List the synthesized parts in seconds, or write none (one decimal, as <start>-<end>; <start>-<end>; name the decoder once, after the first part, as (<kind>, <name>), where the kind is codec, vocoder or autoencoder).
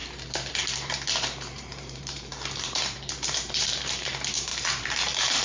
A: 0.5-5.4 (vocoder, BigVGAN v2)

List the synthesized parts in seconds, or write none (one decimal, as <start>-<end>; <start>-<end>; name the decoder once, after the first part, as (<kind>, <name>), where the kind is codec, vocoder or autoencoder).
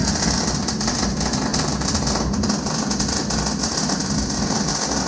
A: 0.0-1.0 (vocoder, BigVGAN v2)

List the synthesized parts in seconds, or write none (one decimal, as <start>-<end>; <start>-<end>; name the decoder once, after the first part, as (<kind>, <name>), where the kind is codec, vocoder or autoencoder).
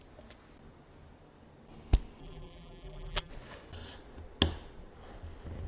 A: 2.2-3.3 (vocoder, BigVGAN v2)